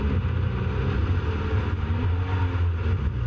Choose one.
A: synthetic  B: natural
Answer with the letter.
B